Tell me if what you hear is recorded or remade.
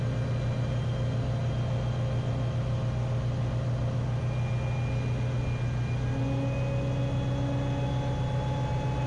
recorded